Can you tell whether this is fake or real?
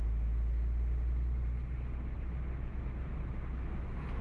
real